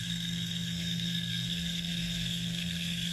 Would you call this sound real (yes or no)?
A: no